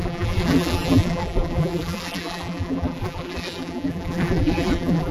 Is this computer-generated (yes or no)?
yes